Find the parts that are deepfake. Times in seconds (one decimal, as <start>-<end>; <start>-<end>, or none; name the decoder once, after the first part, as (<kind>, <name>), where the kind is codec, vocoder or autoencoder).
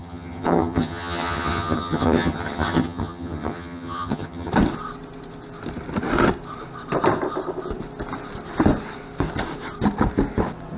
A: 0.0-4.5 (vocoder, HiFi-GAN)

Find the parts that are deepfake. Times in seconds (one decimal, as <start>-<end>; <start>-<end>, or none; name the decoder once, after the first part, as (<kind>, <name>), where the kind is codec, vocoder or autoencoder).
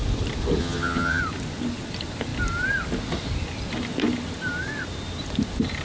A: 0.6-1.2 (vocoder, HiFi-GAN)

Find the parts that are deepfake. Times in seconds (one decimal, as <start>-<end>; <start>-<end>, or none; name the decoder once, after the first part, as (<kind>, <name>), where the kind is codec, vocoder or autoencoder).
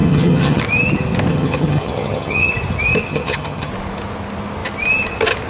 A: 0.0-0.6 (vocoder, HiFi-GAN); 1.3-2.5; 3.1-3.7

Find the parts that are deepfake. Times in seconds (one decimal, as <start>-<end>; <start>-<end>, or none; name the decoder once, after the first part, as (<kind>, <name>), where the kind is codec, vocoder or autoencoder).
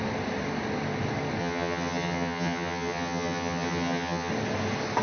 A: 1.4-4.3 (vocoder, HiFi-GAN)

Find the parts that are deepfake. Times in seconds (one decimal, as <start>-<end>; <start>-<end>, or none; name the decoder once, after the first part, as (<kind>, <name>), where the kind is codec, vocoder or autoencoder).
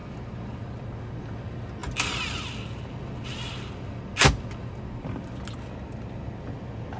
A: none